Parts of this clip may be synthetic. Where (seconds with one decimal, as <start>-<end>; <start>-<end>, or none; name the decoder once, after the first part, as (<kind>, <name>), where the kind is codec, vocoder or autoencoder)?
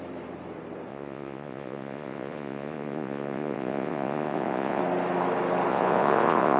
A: 0.9-4.8 (vocoder, Vocos); 5.7-6.6